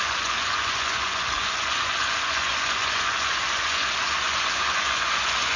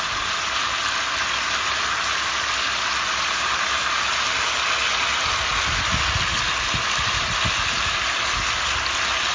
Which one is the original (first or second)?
second